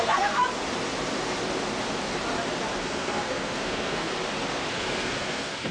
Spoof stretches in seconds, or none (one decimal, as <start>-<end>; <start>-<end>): 0.0-0.4; 2.8-4.1; 4.7-5.7